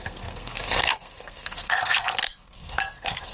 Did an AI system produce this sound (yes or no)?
yes